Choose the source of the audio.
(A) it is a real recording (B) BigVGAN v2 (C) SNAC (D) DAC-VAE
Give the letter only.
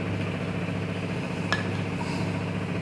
A